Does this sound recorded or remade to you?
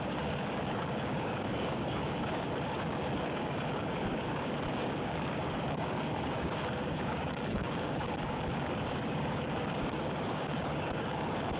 remade